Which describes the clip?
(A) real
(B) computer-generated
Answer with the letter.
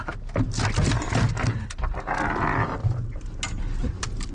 A